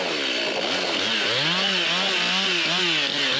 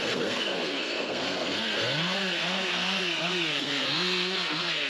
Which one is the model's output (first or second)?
second